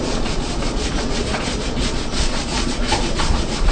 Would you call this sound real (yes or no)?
no